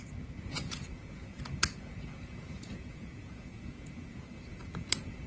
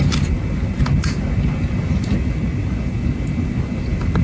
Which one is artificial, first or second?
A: first